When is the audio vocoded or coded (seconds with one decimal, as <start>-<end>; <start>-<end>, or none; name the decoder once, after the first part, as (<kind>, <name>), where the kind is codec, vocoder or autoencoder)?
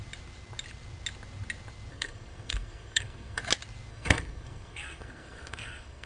1.9-3.4 (codec, SNAC); 3.9-6.1